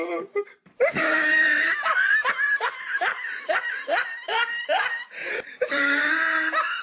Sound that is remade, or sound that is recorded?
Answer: remade